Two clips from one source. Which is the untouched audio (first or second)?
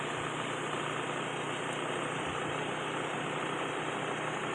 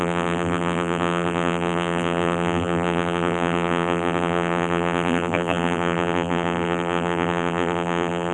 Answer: first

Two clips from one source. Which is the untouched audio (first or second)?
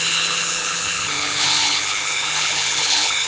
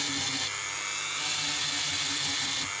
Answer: second